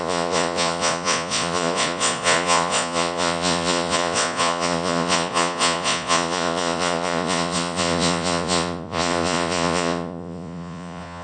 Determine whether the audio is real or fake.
fake